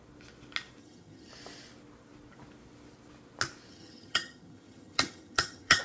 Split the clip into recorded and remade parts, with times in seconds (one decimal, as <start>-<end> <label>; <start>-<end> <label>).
0.0-0.8 recorded; 0.8-1.3 remade; 1.3-3.7 recorded; 3.7-5.8 remade